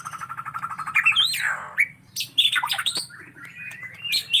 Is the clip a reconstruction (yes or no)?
no